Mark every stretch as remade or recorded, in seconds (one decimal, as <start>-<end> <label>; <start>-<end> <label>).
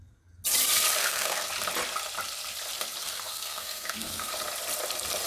0.0-1.0 recorded; 1.0-1.5 remade; 1.5-3.0 recorded; 3.0-4.3 remade; 4.3-5.3 recorded